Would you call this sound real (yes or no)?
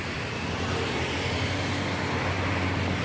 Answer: yes